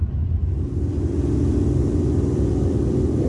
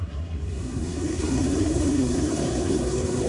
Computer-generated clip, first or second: second